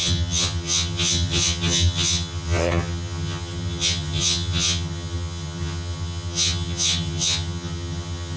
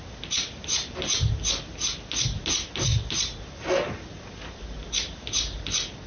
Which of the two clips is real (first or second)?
second